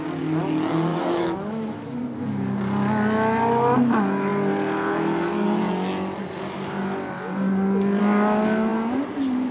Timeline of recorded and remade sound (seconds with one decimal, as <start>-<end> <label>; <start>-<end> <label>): 0.0-0.9 recorded; 0.9-2.0 remade; 2.0-9.5 recorded